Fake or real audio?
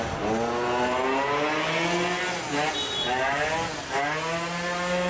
real